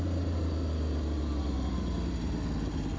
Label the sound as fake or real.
real